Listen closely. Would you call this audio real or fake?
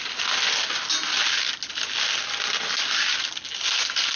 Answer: real